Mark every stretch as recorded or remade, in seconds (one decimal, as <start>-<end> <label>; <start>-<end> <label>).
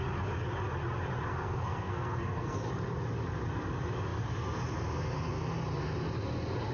0.0-1.3 recorded; 1.3-2.7 remade; 2.7-6.7 recorded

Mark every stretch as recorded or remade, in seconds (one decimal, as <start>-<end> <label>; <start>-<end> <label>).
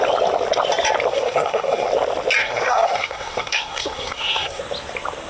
0.0-1.1 recorded; 1.1-1.9 remade; 1.9-2.4 recorded; 2.4-4.6 remade; 4.6-5.3 recorded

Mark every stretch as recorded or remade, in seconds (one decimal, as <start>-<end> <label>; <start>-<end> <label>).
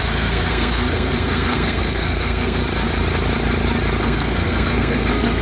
0.0-2.6 remade; 2.6-4.0 recorded; 4.0-5.4 remade